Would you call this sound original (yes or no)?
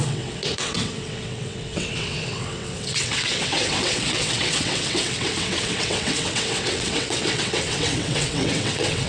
no